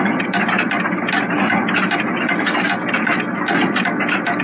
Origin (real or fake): real